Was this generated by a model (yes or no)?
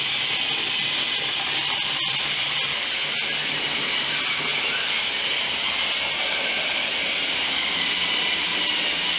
no